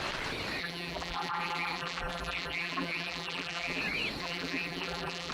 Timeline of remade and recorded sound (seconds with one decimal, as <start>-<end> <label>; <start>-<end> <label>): 0.0-0.6 recorded; 0.6-3.8 remade; 3.8-4.2 recorded; 4.2-5.3 remade